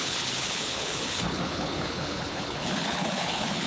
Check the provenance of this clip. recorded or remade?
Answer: remade